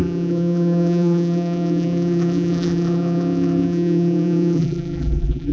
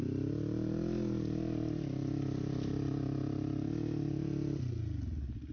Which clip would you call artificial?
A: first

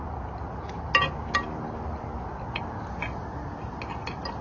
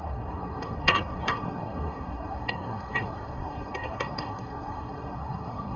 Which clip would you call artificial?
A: second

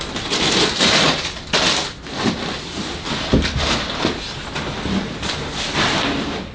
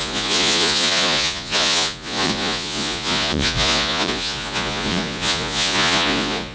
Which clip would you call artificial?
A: second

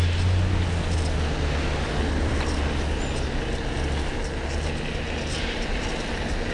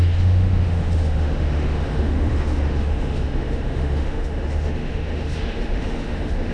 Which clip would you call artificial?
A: second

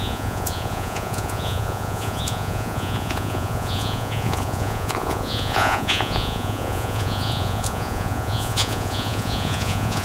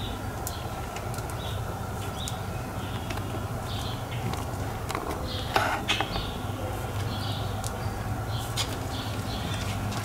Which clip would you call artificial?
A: first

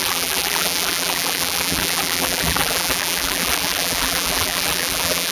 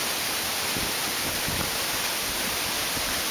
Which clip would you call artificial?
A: first